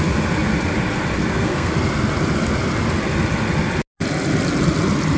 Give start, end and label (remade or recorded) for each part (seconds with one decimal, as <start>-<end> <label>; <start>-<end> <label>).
0.0-1.2 recorded; 1.2-1.7 remade; 1.7-5.2 recorded